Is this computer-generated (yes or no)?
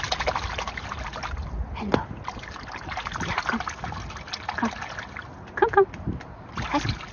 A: no